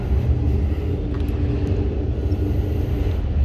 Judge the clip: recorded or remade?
recorded